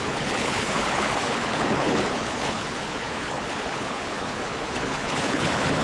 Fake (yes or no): yes